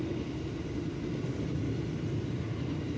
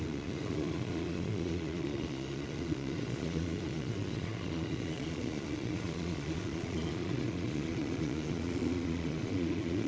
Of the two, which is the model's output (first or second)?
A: second